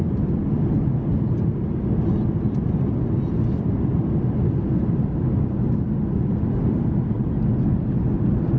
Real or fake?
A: real